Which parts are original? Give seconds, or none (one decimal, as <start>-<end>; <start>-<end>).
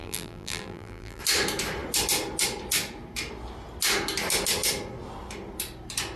1.2-6.2